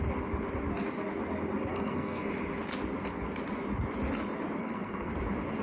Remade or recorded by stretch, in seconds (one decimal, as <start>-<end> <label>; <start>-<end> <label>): 0.0-1.7 recorded; 1.7-2.3 remade; 2.3-4.6 recorded; 4.6-5.1 remade; 5.1-5.6 recorded